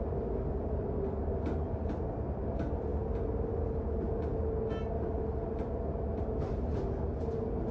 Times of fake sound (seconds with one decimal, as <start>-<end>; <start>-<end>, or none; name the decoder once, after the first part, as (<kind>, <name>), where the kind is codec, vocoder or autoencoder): none